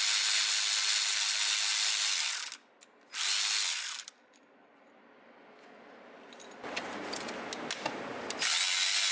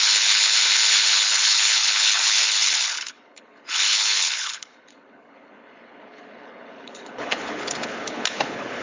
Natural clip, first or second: first